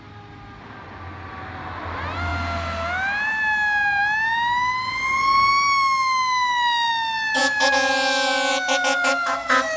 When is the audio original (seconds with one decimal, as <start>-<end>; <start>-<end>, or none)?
0.0-9.8